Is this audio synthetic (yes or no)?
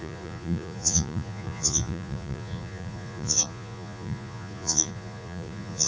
yes